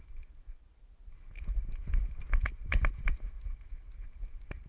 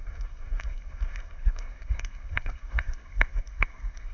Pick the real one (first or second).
first